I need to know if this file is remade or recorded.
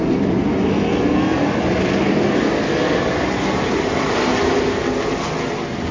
recorded